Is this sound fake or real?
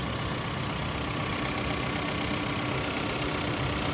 real